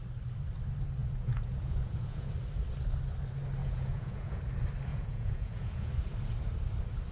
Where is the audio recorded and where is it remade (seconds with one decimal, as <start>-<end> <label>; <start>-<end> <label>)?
0.0-1.0 recorded; 1.0-2.3 remade; 2.3-3.6 recorded; 3.6-4.4 remade; 4.4-4.9 recorded; 4.9-5.9 remade; 5.9-7.1 recorded